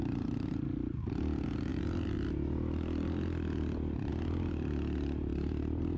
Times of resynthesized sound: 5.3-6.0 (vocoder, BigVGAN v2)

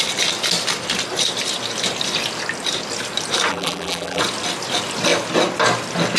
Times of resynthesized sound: 3.5-4.2 (vocoder, BigVGAN v2)

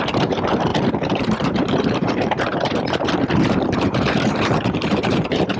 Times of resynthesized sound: 0.0-0.7 (vocoder, BigVGAN v2); 1.2-5.6

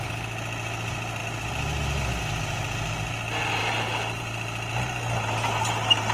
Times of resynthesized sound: none

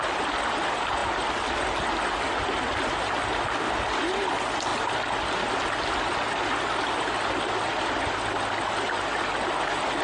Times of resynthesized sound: none